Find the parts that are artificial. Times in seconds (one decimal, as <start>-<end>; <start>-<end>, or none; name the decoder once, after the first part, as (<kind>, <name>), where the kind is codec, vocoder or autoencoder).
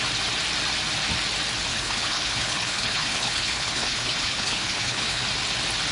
1.7-5.2 (codec, HILCodec)